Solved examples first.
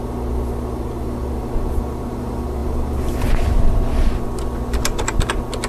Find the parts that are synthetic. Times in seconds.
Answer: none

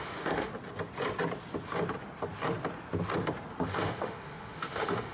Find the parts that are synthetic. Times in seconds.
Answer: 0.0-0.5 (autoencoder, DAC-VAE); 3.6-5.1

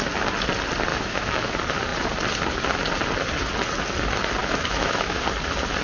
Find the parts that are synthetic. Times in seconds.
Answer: 0.9-1.5 (autoencoder, DAC-VAE); 4.4-5.2